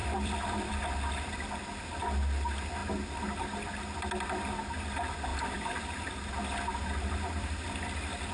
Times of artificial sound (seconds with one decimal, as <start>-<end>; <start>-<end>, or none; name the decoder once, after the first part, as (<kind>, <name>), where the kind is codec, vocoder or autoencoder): 0.0-0.9 (vocoder, BigVGAN v2); 5.3-6.3; 6.7-8.3